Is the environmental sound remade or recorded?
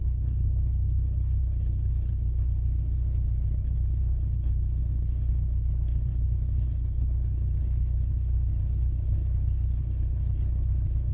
remade